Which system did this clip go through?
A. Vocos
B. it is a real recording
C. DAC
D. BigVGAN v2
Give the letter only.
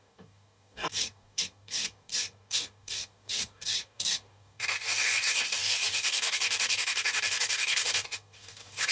C